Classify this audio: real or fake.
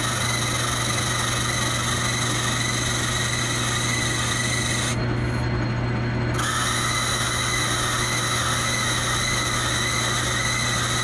real